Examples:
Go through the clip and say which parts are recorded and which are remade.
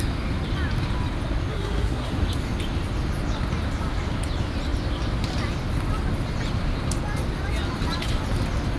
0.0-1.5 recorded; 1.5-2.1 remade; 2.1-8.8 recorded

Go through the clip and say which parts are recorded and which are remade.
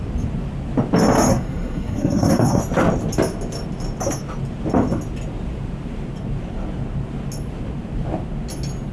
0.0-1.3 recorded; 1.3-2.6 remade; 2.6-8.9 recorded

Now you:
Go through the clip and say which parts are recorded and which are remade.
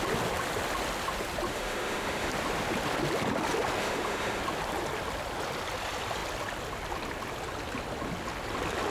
0.0-1.5 recorded; 1.5-2.3 remade; 2.3-3.8 recorded; 3.8-4.4 remade; 4.4-8.9 recorded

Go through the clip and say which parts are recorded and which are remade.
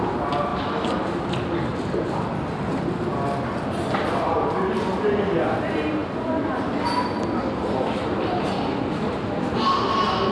0.0-10.3 recorded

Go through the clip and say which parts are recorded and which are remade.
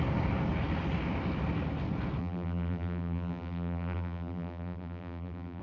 0.0-2.2 recorded; 2.2-5.6 remade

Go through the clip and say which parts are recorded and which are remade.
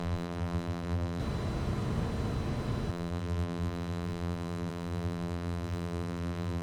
0.0-1.2 remade; 1.2-2.9 recorded; 2.9-6.6 remade